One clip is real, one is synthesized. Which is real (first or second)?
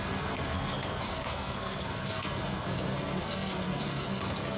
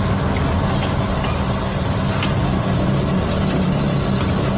second